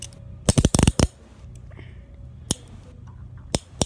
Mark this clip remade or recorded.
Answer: recorded